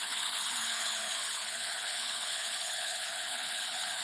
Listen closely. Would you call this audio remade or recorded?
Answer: remade